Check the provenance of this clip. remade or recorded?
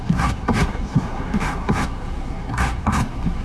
remade